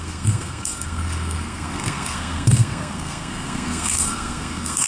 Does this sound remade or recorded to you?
remade